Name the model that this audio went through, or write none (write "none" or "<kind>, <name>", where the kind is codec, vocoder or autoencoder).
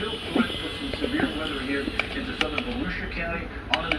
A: none